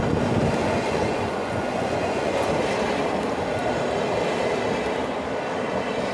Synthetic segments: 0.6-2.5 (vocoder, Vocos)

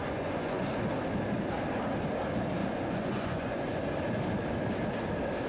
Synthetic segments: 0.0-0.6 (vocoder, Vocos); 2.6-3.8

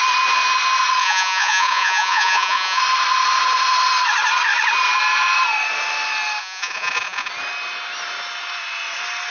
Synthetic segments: 1.0-2.8 (vocoder, Vocos); 6.4-7.3

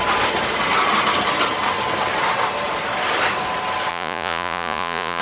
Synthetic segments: 3.9-5.2 (vocoder, Vocos)

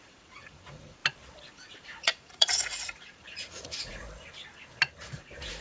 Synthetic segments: 0.0-1.0 (vocoder, Vocos); 1.5-4.0; 5.0-5.6

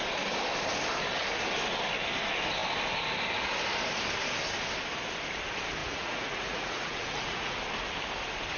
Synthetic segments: 5.8-7.6 (vocoder, Vocos)

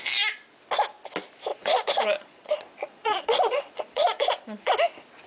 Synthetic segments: 1.5-4.7 (vocoder, Vocos)